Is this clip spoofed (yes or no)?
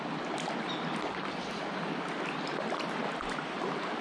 no